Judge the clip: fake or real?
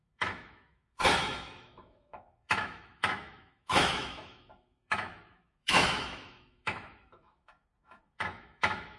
fake